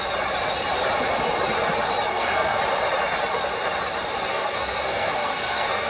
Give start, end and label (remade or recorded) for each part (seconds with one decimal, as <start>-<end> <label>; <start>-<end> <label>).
0.0-2.1 recorded; 2.1-2.6 remade; 2.6-4.3 recorded; 4.3-5.9 remade